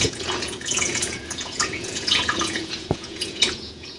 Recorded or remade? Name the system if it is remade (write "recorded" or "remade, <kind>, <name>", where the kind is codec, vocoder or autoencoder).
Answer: remade, vocoder, Vocos